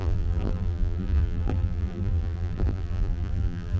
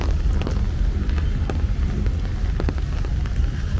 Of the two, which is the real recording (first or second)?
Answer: second